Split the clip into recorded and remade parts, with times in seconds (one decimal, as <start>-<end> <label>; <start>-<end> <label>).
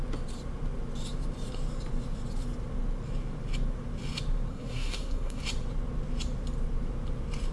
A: 0.0-4.5 recorded; 4.5-5.4 remade; 5.4-7.5 recorded